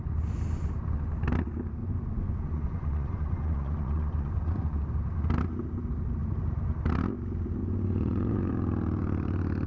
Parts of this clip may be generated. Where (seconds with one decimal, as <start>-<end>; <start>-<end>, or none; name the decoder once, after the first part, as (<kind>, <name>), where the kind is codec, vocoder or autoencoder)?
1.8-4.8 (vocoder, Vocos); 7.6-8.5